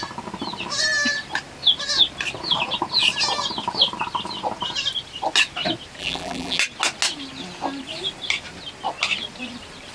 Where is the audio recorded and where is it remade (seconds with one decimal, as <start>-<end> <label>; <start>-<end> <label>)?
0.0-6.0 recorded; 6.0-6.6 remade; 6.6-9.9 recorded